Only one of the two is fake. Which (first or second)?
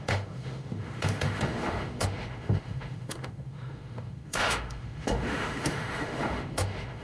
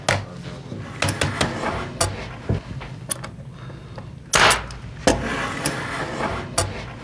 first